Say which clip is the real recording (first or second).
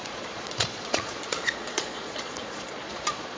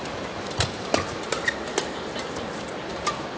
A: second